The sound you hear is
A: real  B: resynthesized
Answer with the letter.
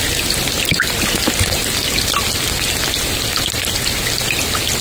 A